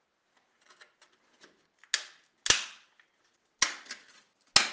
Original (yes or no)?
yes